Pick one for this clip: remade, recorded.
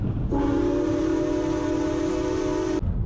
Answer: recorded